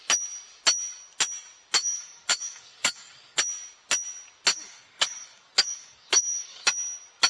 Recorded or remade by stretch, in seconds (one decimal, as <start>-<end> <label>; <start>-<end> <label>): 0.0-1.8 recorded; 1.8-3.4 remade; 3.4-4.5 recorded; 4.5-6.6 remade; 6.6-7.3 recorded